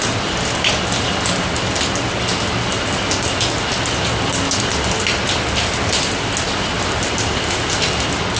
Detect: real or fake real